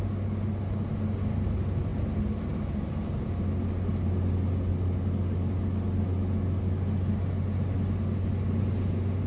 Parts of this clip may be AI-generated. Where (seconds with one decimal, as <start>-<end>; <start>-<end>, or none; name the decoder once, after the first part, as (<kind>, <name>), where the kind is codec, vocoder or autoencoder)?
none